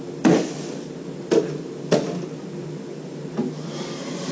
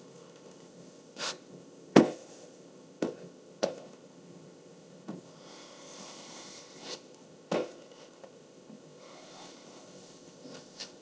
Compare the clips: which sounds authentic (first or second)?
first